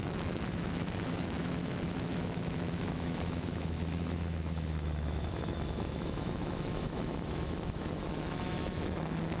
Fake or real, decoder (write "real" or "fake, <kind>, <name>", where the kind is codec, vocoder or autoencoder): fake, autoencoder, DAC-VAE